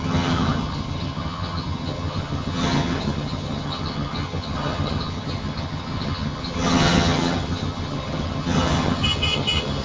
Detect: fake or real fake